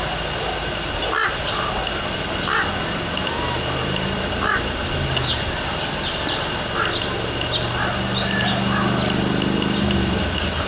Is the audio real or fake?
real